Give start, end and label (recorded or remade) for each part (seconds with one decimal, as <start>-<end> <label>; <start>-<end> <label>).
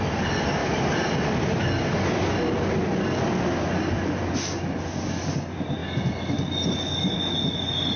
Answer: 0.0-8.0 recorded